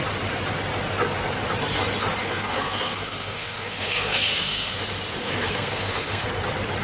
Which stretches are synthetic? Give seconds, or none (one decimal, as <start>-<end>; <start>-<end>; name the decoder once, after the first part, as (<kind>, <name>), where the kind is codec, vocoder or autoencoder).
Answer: 2.2-4.8 (codec, SNAC); 5.2-6.3